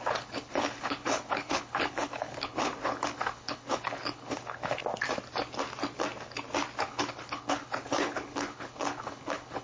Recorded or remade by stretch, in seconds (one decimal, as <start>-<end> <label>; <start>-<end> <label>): 0.0-4.8 remade; 4.8-6.8 recorded; 6.8-9.6 remade